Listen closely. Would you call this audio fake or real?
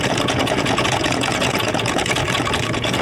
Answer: fake